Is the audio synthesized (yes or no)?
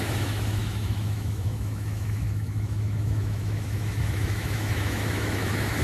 yes